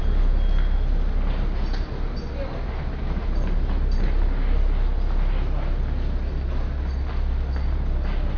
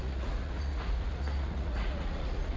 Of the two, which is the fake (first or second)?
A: second